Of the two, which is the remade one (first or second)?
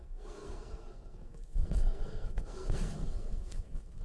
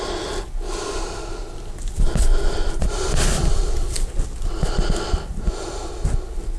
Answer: first